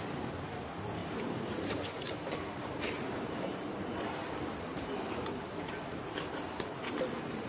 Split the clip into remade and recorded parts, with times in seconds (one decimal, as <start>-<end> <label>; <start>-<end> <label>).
0.0-1.0 recorded; 1.0-5.5 remade; 5.5-7.5 recorded